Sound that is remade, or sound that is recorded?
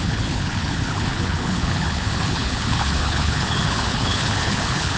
remade